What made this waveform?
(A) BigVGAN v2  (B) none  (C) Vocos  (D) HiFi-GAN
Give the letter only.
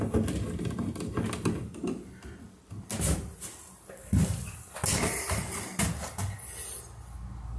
B